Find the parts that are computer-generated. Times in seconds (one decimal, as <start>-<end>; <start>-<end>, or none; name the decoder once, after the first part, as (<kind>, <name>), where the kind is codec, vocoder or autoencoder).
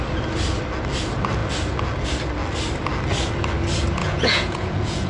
4.0-5.1 (vocoder, Vocos)